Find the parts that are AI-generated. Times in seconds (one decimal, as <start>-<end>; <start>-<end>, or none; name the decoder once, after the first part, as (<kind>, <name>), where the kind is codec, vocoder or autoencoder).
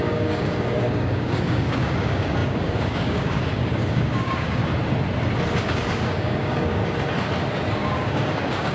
0.0-4.6 (codec, DAC); 5.6-6.8; 7.7-8.7